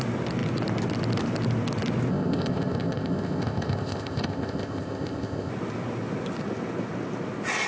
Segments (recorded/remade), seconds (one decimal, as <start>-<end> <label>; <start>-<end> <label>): 0.0-2.1 recorded; 2.1-5.5 remade; 5.5-7.7 recorded